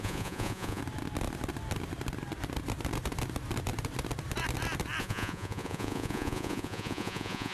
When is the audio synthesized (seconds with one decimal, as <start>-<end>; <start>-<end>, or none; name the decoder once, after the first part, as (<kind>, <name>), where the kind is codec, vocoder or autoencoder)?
0.0-0.8 (vocoder, Vocos); 5.0-7.5